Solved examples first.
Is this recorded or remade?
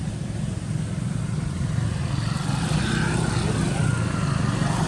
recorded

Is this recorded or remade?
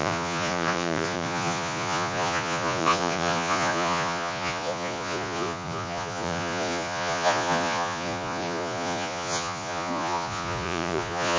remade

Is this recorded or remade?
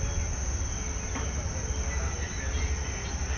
recorded